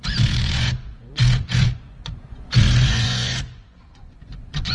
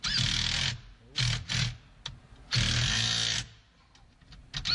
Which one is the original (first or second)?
second